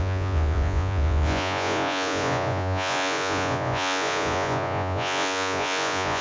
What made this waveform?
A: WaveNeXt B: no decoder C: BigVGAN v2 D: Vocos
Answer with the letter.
D